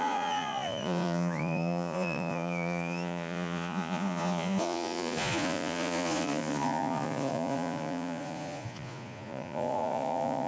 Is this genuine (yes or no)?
no